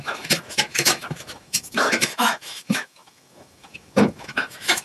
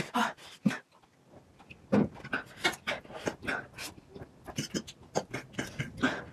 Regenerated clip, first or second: first